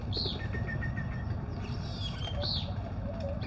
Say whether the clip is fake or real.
real